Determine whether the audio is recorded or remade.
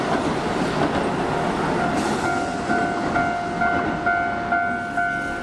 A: recorded